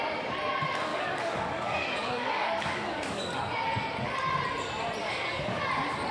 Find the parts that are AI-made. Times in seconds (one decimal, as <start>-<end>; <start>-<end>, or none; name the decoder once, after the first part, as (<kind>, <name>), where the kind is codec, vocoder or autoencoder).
0.9-3.4 (codec, DAC); 5.0-5.6